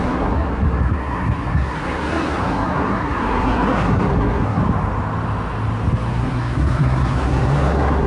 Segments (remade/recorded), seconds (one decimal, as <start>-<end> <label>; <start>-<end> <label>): 0.0-4.6 remade; 4.6-6.1 recorded; 6.1-8.1 remade